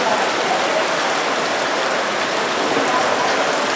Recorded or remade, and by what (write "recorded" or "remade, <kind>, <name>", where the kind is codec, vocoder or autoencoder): recorded